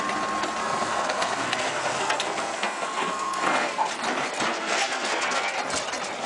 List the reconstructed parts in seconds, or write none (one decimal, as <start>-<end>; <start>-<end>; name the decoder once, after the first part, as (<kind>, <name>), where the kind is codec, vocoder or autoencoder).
0.6-3.9 (codec, SNAC); 4.5-5.5